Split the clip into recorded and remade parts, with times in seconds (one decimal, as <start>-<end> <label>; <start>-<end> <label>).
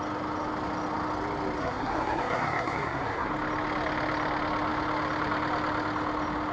0.0-1.6 recorded; 1.6-3.3 remade; 3.3-6.5 recorded